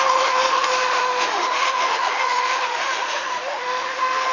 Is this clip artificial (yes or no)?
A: yes